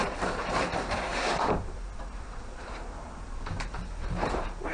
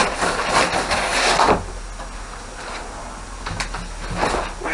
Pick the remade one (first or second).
first